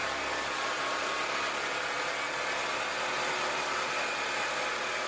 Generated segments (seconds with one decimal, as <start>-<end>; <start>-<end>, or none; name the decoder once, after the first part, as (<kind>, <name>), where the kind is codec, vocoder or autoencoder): none